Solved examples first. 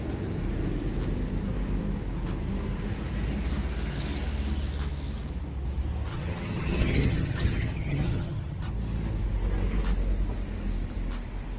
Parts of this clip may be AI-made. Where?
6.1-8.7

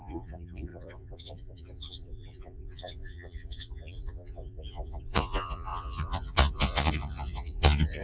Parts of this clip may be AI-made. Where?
0.0-8.0

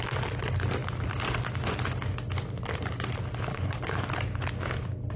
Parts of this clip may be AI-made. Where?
3.5-4.1

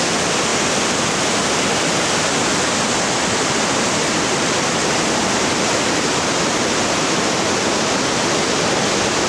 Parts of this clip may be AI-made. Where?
none

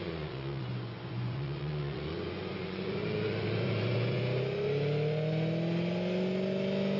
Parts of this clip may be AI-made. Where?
0.0-4.2

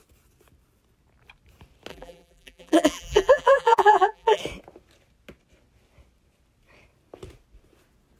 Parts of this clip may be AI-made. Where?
1.9-4.4

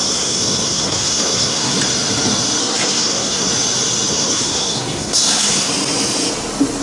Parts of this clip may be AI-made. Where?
0.0-1.8; 2.6-3.5; 4.1-5.7